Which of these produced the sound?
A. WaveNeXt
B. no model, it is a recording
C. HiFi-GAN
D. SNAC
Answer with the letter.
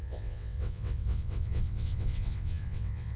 A